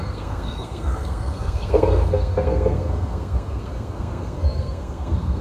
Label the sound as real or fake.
fake